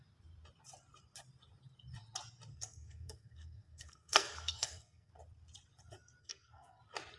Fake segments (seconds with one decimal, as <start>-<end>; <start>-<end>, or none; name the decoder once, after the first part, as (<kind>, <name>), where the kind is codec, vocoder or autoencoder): 2.5-5.1 (codec, SNAC); 6.2-6.8